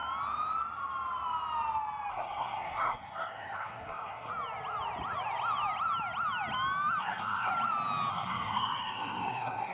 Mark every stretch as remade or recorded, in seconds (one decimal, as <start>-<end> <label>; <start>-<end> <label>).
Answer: 0.0-2.1 recorded; 2.1-4.3 remade; 4.3-7.0 recorded; 7.0-7.5 remade; 7.5-8.1 recorded; 8.1-9.7 remade